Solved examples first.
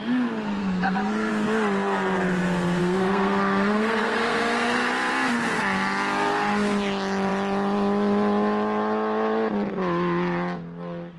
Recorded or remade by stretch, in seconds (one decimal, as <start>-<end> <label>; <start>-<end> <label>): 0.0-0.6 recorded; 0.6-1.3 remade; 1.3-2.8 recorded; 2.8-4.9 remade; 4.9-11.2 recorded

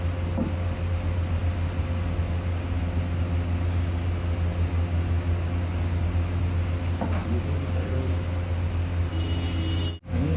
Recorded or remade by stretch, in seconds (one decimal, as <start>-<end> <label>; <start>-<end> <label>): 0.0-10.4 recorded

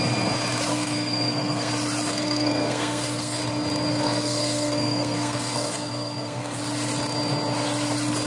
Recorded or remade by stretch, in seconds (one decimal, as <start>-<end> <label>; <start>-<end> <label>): 0.0-0.7 recorded; 0.7-1.7 remade; 1.7-2.1 recorded; 2.1-3.4 remade; 3.4-3.9 recorded; 3.9-6.6 remade; 6.6-8.3 recorded

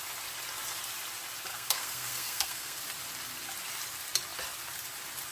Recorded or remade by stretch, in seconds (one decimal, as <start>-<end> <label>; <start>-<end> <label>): 0.0-1.5 recorded; 1.5-2.8 remade; 2.8-5.3 recorded